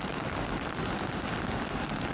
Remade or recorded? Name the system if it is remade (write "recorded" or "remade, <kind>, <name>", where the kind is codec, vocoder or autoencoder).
recorded